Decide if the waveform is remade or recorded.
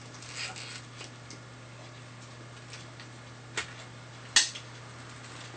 recorded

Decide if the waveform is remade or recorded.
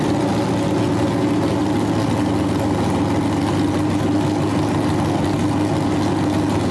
recorded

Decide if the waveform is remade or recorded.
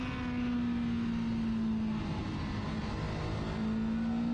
recorded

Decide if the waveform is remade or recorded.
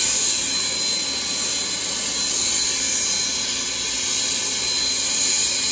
recorded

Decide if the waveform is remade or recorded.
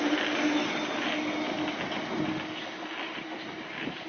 recorded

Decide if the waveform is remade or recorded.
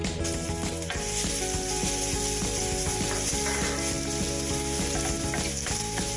recorded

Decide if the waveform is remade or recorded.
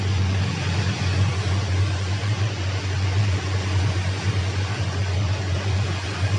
remade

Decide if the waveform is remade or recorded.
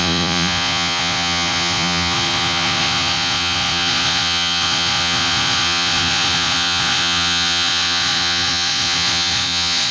remade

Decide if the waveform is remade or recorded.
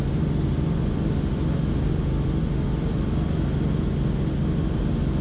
recorded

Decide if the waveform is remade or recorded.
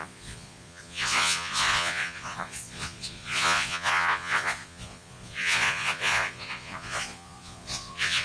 remade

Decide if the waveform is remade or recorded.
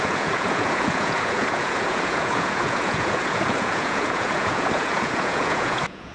remade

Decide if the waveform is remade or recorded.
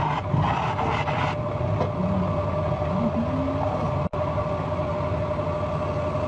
recorded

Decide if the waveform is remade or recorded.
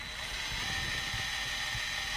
recorded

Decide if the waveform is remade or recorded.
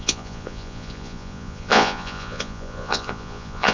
remade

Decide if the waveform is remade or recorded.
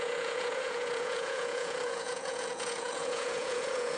remade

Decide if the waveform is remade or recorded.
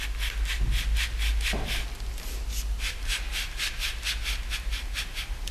recorded